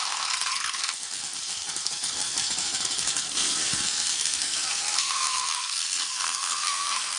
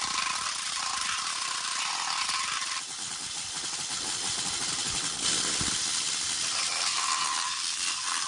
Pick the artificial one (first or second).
first